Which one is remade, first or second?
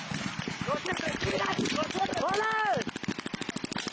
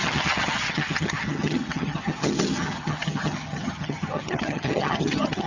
second